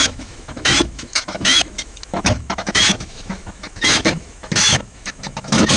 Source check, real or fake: fake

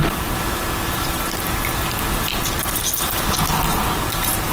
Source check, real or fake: real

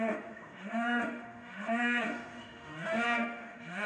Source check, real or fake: fake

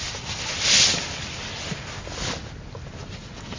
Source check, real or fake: real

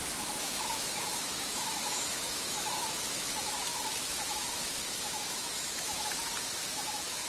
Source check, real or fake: fake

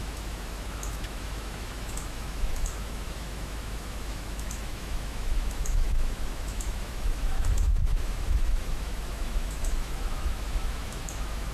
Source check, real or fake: fake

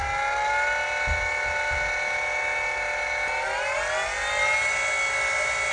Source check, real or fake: real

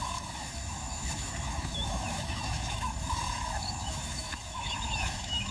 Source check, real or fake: fake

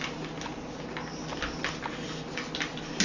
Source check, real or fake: real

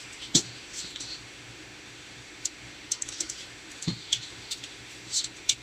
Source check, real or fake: fake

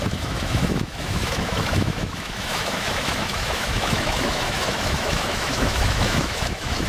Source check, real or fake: fake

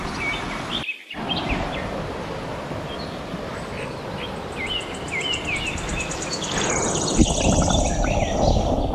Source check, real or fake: real